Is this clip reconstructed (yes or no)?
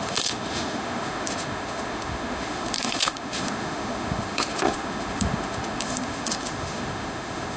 yes